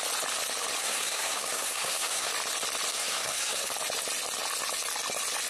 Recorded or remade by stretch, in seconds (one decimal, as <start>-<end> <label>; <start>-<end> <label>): 0.0-0.8 recorded; 0.8-2.3 remade; 2.3-2.9 recorded; 2.9-3.7 remade; 3.7-5.5 recorded